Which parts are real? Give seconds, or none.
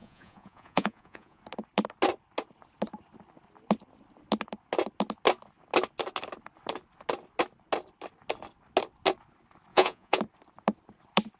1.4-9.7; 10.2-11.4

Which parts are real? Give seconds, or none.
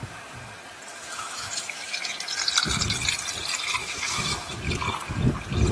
0.0-0.9; 2.1-3.8; 4.6-5.7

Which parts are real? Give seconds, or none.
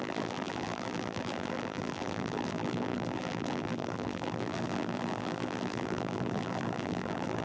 none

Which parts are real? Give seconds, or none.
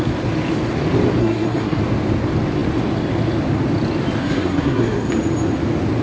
0.0-1.2; 1.8-4.2; 5.1-6.0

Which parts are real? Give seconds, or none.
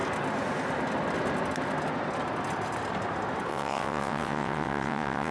0.0-3.5